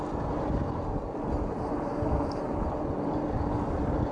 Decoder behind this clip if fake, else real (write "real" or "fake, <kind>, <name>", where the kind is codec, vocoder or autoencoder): real